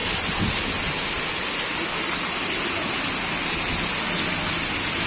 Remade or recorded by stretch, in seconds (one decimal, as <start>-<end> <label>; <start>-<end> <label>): 0.0-5.1 recorded